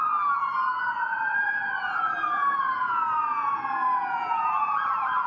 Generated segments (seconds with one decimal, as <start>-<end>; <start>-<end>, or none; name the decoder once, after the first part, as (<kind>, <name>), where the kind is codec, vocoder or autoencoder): 0.0-5.3 (vocoder, Vocos)